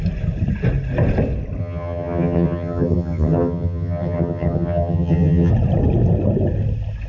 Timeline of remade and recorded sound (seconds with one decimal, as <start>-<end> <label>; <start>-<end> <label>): 0.0-1.6 recorded; 1.6-5.5 remade; 5.5-7.1 recorded